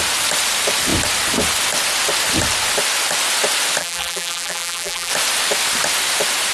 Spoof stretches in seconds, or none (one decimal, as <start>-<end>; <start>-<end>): 3.8-5.1